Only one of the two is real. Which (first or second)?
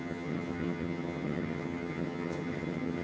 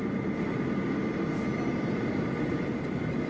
second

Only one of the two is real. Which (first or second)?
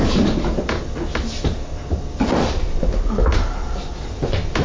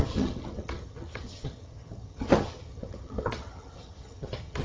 first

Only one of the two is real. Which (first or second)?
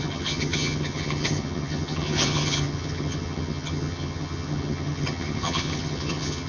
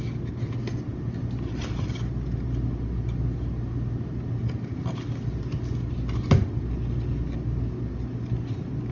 second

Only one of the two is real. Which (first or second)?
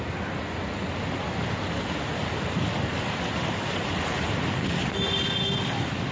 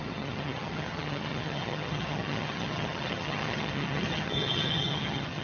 first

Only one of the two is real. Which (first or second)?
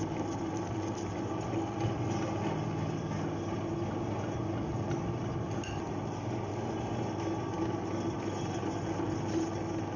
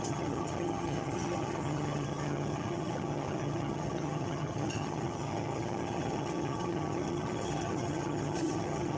first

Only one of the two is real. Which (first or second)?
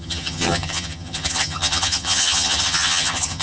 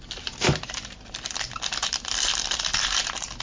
second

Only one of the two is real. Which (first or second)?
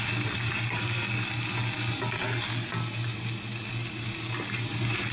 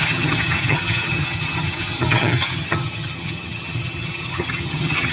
first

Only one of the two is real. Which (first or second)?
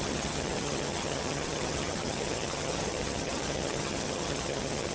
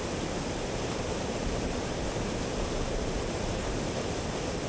second